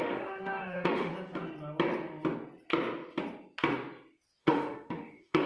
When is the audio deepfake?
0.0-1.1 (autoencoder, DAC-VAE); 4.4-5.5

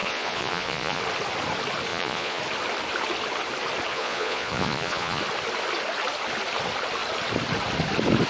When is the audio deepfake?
0.0-1.0 (vocoder, Vocos); 1.9-2.4; 3.9-5.2

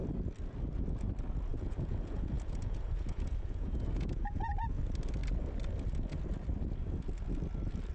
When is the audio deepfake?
1.5-4.8 (vocoder, Vocos)

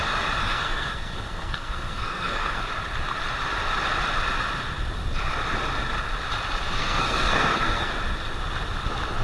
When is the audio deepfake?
0.4-2.6 (codec, SNAC); 6.8-7.9